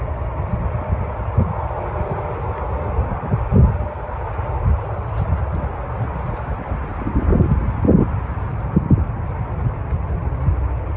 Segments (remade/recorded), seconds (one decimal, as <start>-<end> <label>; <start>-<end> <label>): 0.0-11.0 recorded